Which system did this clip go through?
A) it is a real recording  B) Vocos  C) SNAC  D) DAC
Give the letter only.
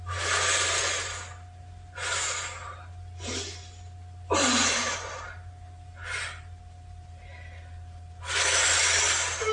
A